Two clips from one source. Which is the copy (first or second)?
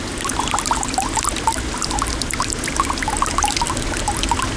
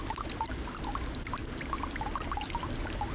second